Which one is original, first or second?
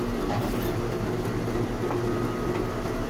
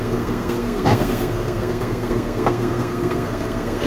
first